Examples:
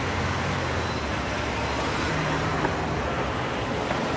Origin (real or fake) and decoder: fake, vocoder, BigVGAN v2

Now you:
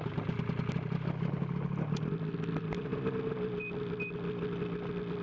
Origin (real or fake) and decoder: real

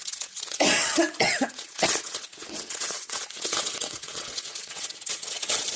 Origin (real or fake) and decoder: fake, vocoder, WaveNeXt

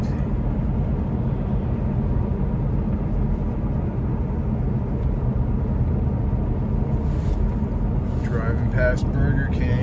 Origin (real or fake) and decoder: real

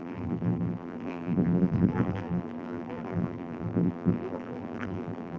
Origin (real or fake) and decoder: fake, vocoder, BigVGAN v2